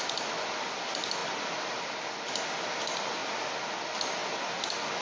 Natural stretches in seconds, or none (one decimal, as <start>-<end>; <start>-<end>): 1.2-2.7; 3.2-3.7; 4.2-5.0